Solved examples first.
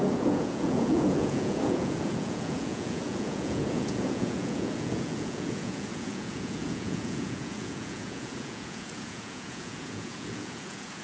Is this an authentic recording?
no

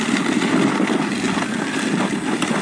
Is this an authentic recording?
yes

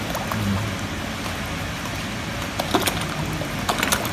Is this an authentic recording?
yes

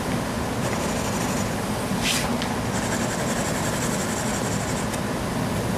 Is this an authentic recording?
yes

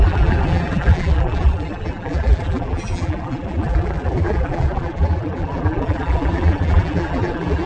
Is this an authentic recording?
no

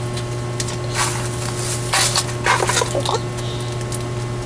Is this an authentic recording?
yes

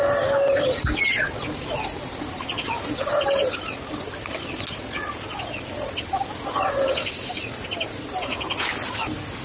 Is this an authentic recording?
yes